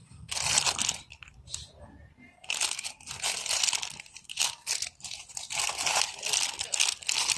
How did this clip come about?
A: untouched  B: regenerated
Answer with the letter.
A